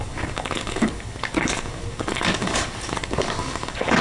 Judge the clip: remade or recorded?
remade